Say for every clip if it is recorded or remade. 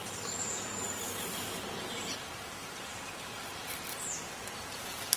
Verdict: remade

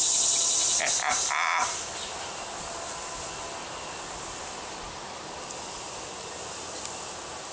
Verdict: recorded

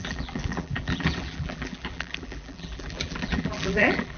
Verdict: remade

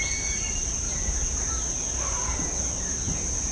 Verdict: remade